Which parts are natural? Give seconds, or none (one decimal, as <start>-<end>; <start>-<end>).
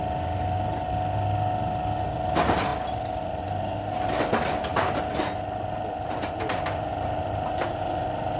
0.0-8.4